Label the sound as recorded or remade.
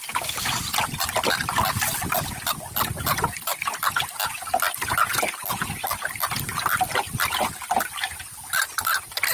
recorded